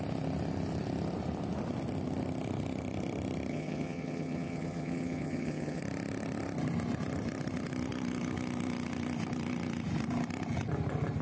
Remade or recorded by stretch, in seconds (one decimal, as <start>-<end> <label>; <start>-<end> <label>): 0.0-3.5 recorded; 3.5-5.8 remade; 5.8-11.2 recorded